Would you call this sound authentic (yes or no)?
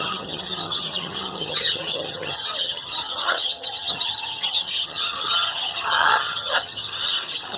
no